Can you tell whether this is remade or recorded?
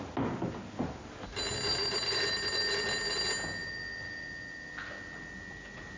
recorded